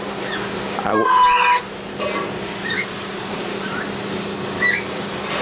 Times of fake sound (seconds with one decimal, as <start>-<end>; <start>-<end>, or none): 0.9-1.6; 2.6-3.8